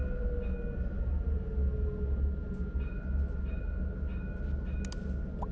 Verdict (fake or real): real